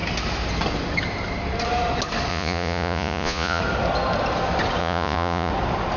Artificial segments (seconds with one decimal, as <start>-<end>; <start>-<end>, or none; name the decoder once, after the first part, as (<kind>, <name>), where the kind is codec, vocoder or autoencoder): 2.3-3.6 (vocoder, Vocos); 4.8-5.5